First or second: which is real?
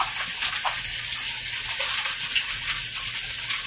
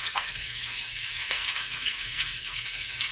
first